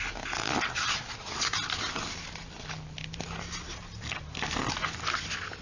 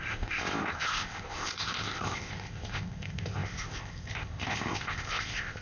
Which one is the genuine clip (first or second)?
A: first